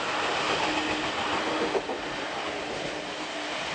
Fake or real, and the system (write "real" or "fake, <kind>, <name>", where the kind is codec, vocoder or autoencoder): real